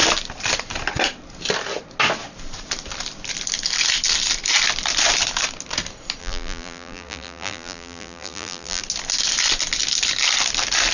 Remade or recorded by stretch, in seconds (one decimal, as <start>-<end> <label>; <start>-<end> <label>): 0.0-6.2 recorded; 6.2-8.8 remade; 8.8-10.9 recorded